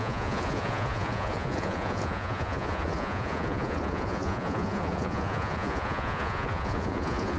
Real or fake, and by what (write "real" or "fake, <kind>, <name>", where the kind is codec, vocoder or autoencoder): fake, vocoder, Vocos